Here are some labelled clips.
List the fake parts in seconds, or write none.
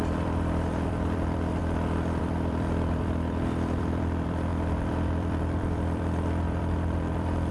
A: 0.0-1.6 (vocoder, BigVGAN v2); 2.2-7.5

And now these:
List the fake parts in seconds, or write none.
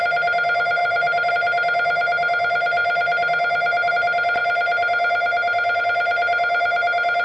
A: 0.8-1.3 (vocoder, BigVGAN v2)